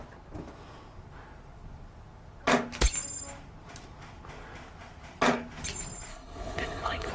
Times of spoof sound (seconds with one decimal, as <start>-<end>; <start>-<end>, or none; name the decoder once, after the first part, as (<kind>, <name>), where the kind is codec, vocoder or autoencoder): 6.1-7.1 (codec, HILCodec)